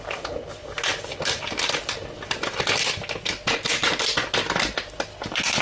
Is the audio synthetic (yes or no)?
no